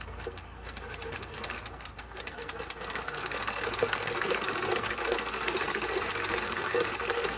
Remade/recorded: remade